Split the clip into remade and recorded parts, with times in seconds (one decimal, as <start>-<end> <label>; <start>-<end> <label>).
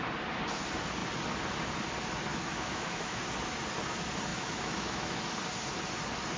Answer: 0.0-2.3 recorded; 2.3-3.2 remade; 3.2-4.3 recorded; 4.3-5.2 remade; 5.2-6.4 recorded